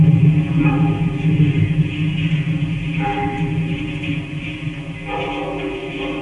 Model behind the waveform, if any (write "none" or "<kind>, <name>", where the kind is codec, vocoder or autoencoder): none